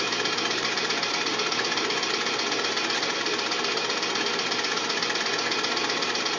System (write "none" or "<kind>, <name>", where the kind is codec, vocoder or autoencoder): none